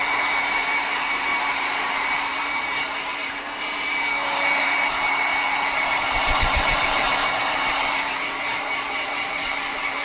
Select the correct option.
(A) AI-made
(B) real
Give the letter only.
A